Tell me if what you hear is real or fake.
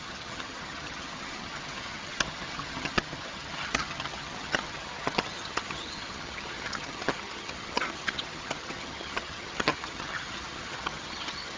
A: fake